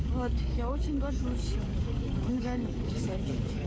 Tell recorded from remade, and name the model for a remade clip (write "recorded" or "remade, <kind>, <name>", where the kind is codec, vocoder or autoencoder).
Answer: remade, codec, DAC